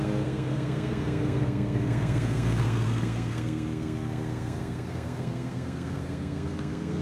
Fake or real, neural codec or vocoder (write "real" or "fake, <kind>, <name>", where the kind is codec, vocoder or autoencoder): fake, codec, SNAC